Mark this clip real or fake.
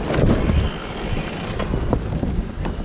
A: real